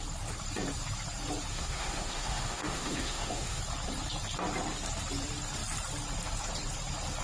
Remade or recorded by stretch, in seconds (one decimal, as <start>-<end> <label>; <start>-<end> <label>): 0.0-1.5 recorded; 1.5-3.6 remade; 3.6-7.2 recorded